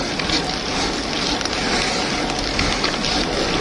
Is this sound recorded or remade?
recorded